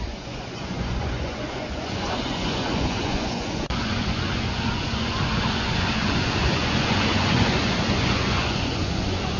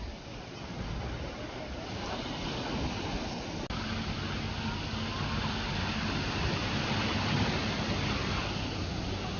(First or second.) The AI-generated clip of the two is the first